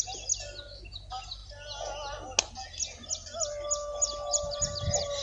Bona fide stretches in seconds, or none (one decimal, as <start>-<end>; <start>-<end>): 0.0-5.2